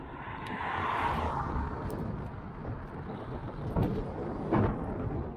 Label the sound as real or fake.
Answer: real